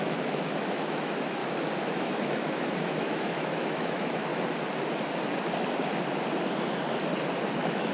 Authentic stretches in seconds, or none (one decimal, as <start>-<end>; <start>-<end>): 1.4-1.9; 4.3-7.5